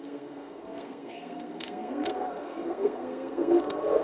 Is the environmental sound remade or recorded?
remade